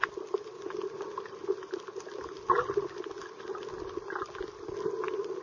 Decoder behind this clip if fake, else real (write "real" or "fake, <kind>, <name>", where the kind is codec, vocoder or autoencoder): real